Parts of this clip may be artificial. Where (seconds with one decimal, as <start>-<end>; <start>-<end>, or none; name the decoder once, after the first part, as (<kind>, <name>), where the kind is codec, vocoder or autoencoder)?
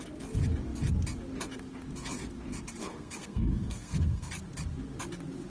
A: 2.8-4.3 (codec, SNAC)